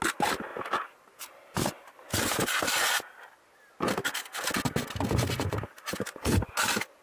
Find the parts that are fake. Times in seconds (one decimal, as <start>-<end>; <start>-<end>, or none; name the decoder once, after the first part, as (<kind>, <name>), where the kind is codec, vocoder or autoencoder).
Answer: none